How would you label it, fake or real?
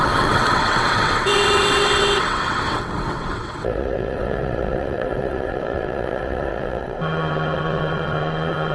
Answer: fake